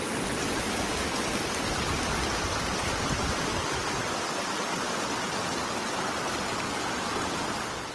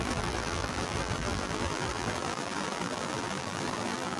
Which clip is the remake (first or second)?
second